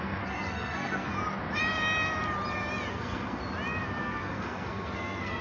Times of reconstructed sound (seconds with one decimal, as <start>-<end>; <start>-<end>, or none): 0.0-1.1; 2.9-3.4; 4.0-5.4